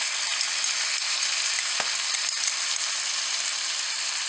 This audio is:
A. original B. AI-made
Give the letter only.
A